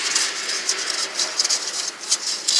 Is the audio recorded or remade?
recorded